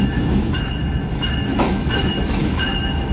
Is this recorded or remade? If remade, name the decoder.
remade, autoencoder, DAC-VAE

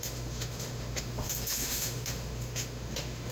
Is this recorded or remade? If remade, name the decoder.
remade, autoencoder, DAC-VAE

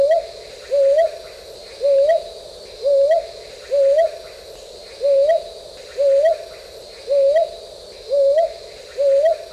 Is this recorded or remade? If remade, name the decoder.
recorded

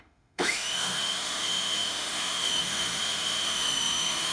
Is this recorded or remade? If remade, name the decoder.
remade, autoencoder, DAC-VAE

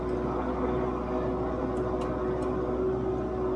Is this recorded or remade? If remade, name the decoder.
recorded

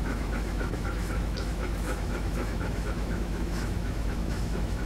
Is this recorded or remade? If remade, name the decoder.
remade, autoencoder, DAC-VAE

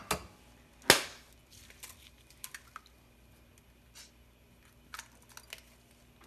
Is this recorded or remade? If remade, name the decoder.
recorded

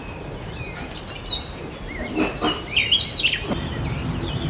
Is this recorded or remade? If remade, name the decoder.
recorded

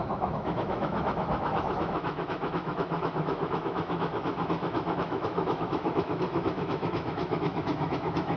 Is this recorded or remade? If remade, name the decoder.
remade, autoencoder, DAC-VAE